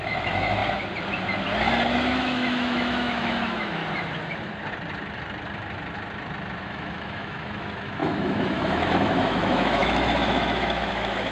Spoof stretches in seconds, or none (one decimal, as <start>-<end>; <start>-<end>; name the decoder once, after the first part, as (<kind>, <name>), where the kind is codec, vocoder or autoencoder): 0.0-0.6 (autoencoder, DAC-VAE); 1.9-3.8; 6.6-11.3